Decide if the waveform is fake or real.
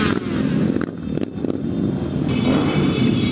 real